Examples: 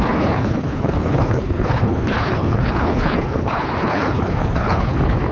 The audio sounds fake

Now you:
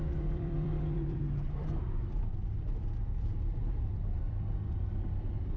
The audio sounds fake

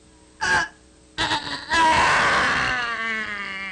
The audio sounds real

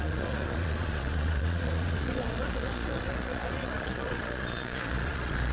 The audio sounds fake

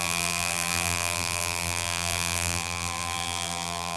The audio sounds fake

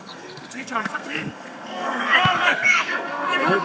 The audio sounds fake